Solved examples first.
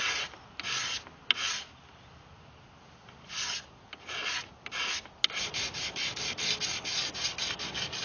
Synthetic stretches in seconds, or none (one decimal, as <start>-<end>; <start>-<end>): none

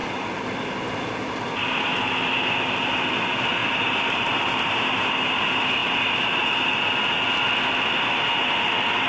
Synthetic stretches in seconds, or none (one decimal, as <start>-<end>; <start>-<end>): none

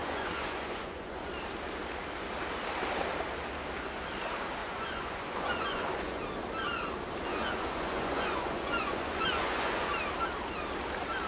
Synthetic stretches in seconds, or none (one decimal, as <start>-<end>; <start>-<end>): 0.0-1.3; 4.6-6.2; 7.3-9.9